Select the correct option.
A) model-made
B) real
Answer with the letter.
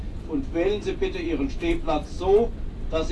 B